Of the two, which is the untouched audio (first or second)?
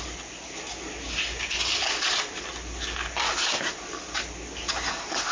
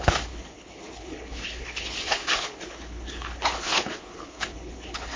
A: first